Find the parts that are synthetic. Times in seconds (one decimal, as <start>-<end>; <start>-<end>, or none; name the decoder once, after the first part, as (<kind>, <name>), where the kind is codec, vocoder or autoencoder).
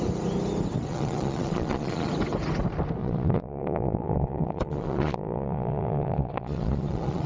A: 0.9-2.1 (vocoder, Vocos); 3.0-7.3